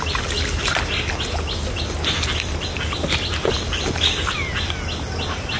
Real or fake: real